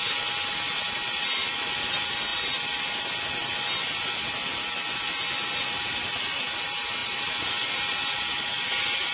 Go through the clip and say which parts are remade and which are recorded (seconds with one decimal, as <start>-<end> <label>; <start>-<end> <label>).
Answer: 0.0-9.1 recorded